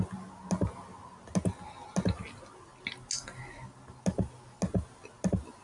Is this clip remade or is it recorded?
recorded